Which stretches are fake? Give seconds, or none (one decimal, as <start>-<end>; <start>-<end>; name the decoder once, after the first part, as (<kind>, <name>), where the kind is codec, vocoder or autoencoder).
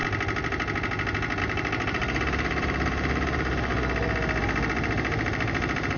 1.4-3.7 (vocoder, BigVGAN v2); 4.4-6.0